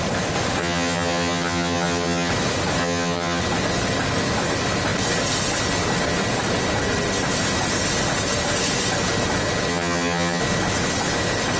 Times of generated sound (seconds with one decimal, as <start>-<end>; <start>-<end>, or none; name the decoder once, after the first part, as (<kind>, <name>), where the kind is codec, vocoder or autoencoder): 0.6-2.3 (vocoder, HiFi-GAN); 2.8-3.4; 9.7-10.4